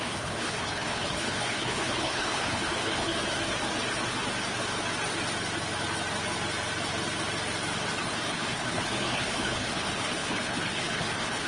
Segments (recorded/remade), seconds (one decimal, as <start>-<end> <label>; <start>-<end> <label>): 0.0-3.1 remade; 3.1-8.1 recorded; 8.1-11.5 remade